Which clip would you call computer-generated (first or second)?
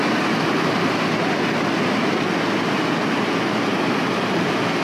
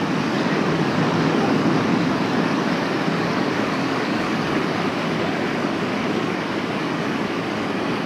second